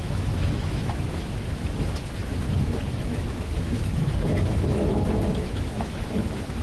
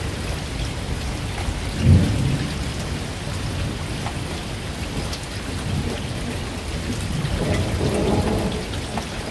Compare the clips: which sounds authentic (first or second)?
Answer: second